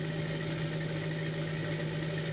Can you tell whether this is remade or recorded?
recorded